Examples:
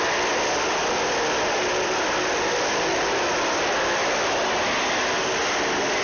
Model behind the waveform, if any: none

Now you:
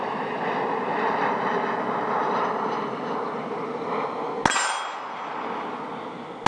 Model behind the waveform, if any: none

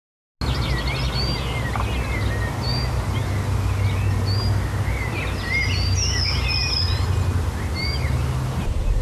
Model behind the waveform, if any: none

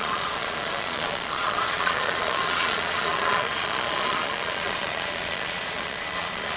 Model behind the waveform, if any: vocoder, Vocos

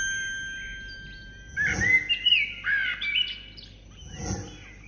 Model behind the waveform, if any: none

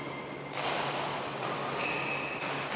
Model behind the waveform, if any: none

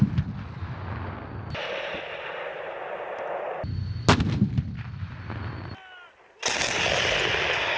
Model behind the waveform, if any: none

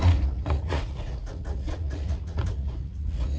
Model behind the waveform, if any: vocoder, Vocos